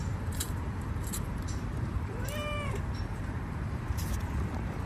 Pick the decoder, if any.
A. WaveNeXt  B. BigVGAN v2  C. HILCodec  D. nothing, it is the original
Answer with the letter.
B